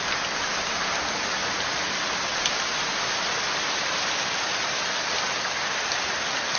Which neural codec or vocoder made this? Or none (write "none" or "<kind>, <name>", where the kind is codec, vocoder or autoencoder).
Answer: none